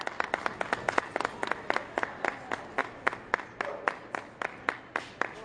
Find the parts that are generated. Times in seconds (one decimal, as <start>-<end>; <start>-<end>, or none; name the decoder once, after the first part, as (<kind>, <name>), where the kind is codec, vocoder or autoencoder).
none